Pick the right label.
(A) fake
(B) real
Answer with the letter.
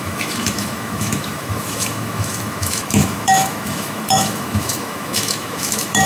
A